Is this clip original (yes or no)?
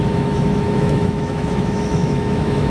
no